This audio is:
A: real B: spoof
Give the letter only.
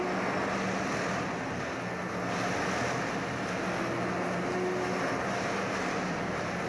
A